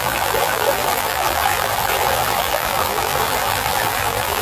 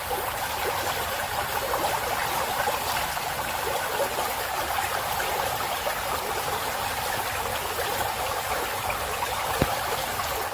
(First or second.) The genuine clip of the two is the second